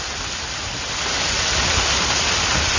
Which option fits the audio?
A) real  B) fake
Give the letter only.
A